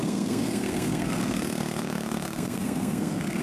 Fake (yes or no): yes